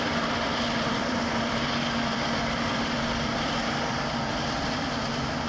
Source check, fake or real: fake